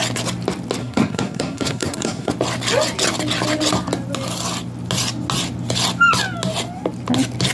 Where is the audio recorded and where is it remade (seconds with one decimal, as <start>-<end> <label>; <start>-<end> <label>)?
0.0-0.8 recorded; 0.8-2.3 remade; 2.3-7.5 recorded